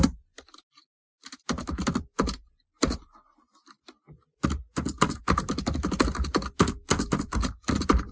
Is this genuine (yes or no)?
yes